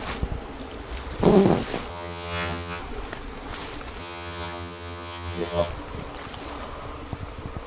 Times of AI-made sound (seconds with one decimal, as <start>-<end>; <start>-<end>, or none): 1.9-2.8; 4.0-5.7